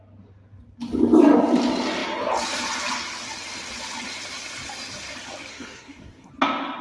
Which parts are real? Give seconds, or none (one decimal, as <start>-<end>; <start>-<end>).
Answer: 0.0-5.5; 6.3-6.8